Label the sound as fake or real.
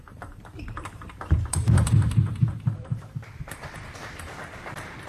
fake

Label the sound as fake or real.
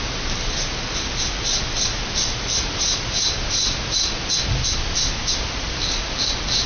real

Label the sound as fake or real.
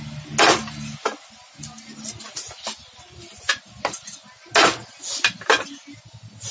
real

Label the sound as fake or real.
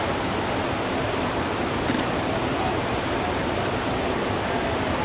real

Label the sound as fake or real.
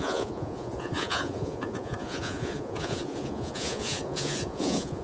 fake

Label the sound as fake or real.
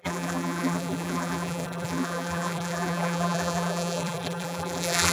fake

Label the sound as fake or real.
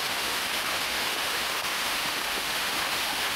fake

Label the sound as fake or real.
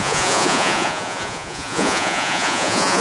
fake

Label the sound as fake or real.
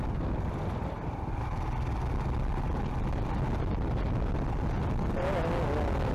real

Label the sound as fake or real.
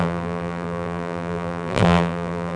fake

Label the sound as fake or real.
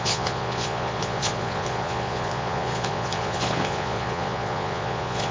fake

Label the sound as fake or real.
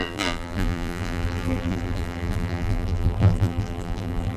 fake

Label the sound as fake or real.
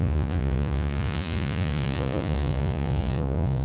fake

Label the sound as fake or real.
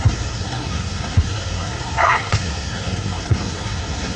fake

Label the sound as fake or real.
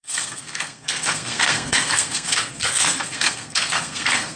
fake